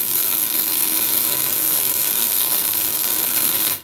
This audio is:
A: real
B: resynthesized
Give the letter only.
B